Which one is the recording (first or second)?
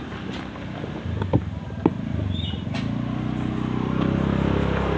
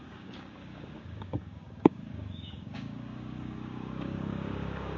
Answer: first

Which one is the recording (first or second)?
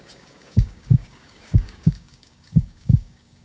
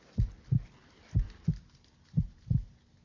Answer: second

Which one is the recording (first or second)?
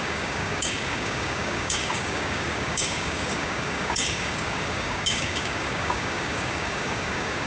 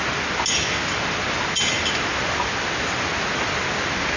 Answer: second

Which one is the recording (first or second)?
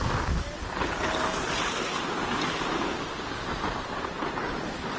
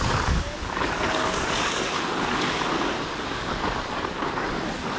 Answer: first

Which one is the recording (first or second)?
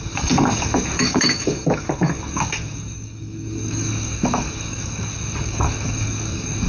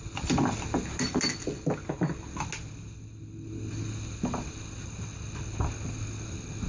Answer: second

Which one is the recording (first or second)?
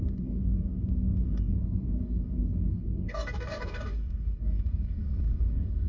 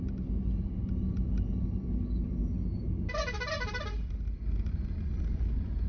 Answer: second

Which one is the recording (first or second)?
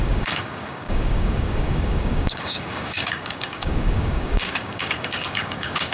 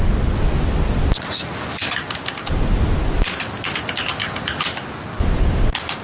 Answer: second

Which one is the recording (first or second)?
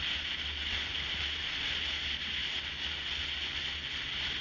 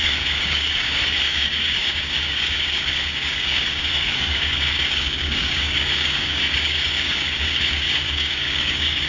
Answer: first